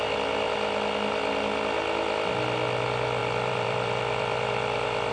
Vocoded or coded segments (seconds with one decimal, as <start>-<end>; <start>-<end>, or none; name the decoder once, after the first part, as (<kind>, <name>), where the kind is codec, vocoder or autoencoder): 3.2-5.1 (vocoder, BigVGAN v2)